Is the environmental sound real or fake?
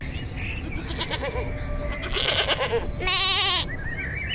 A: real